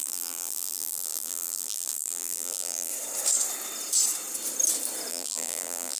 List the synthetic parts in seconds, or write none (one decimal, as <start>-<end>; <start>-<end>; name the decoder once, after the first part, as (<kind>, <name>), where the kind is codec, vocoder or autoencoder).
0.0-2.9 (vocoder, BigVGAN v2); 5.1-6.0